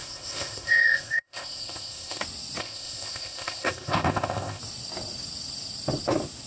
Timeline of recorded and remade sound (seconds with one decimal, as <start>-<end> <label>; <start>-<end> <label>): 0.0-2.2 remade; 2.2-2.6 recorded; 2.6-4.6 remade; 4.6-6.5 recorded

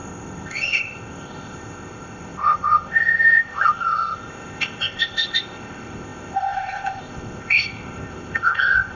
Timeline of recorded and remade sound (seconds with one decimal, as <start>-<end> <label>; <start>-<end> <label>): 0.0-9.0 remade